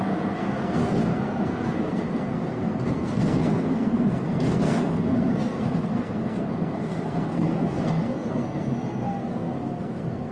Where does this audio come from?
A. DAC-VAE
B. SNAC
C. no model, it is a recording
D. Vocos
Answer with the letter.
B